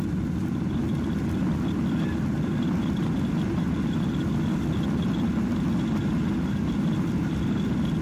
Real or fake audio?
real